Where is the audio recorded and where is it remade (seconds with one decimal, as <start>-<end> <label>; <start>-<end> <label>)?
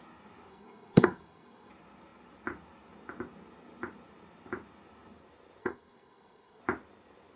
0.0-0.5 recorded; 0.5-1.7 remade; 1.7-5.6 recorded; 5.6-6.6 remade; 6.6-7.4 recorded